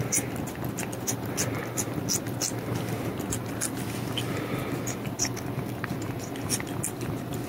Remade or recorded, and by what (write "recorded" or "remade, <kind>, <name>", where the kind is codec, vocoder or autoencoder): recorded